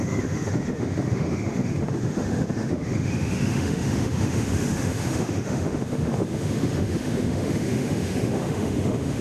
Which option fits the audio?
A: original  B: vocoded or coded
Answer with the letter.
B